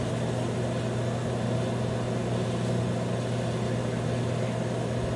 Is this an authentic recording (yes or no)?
yes